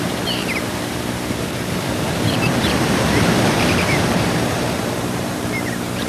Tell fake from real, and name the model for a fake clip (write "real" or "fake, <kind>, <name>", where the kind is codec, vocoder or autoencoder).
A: fake, vocoder, BigVGAN v2